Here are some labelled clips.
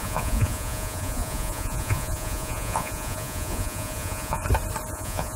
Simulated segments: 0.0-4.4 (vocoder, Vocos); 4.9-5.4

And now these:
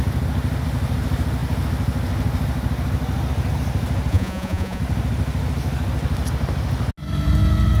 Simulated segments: 4.1-4.8 (vocoder, Vocos)

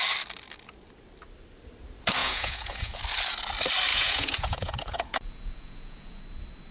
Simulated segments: 2.2-3.0 (vocoder, Vocos); 3.9-6.2

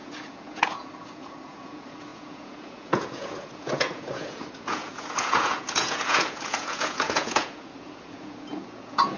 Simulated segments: 0.0-9.2 (vocoder, Vocos)